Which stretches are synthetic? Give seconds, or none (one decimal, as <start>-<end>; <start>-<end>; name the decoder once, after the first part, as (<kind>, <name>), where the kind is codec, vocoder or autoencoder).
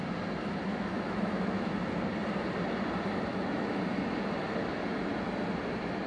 0.7-1.7 (autoencoder, DAC-VAE); 3.3-3.8